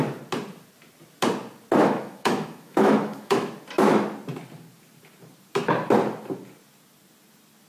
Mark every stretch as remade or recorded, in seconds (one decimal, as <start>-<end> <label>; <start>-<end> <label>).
0.0-1.8 recorded; 1.8-3.5 remade; 3.5-7.7 recorded